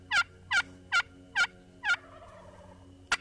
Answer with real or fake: real